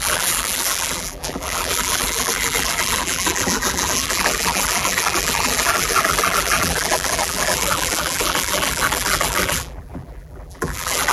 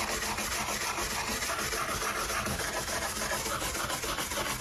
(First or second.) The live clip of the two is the second